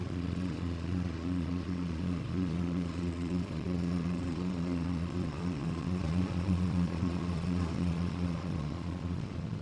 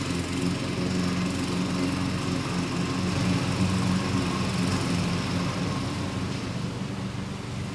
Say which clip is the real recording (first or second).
second